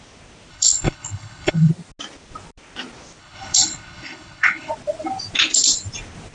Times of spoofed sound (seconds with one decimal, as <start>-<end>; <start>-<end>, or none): 0.5-1.7; 3.2-4.7